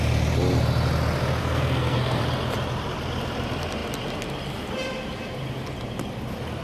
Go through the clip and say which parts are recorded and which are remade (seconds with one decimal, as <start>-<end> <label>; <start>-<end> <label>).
0.0-1.4 recorded; 1.4-2.2 remade; 2.2-6.6 recorded